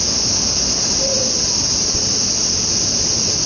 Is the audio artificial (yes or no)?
no